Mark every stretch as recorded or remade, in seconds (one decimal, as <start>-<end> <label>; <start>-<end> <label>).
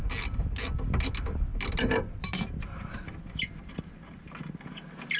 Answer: 0.0-5.2 recorded